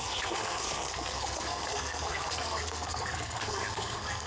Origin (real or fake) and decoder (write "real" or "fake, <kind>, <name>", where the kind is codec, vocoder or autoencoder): fake, codec, SNAC